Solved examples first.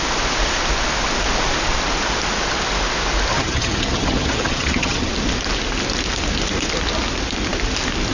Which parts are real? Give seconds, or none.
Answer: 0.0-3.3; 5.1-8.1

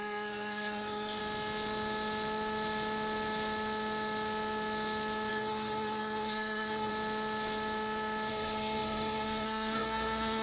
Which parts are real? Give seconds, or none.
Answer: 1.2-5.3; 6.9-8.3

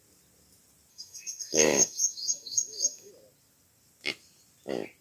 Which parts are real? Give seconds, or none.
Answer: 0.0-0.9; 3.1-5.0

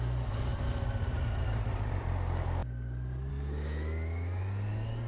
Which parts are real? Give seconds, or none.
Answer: 0.0-5.1

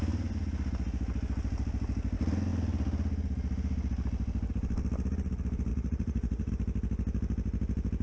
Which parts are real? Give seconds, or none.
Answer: 0.0-5.7; 6.5-8.0

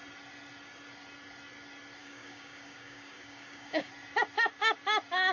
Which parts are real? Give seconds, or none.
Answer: 0.0-2.0; 3.9-5.3

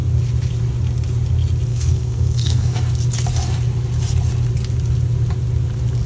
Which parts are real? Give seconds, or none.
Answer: 0.0-1.7; 2.8-6.1